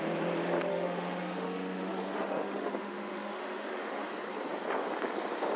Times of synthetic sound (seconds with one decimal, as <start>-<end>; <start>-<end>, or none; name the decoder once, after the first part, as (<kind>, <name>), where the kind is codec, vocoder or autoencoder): 0.7-4.1 (autoencoder, DAC-VAE)